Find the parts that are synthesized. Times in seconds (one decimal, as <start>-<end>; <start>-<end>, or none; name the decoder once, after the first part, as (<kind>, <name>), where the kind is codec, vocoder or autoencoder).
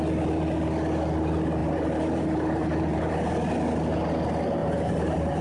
1.6-3.1 (vocoder, BigVGAN v2); 4.6-5.4